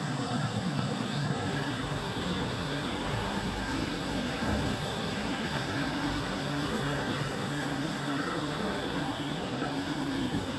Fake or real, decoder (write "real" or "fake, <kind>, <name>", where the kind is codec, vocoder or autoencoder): fake, codec, SNAC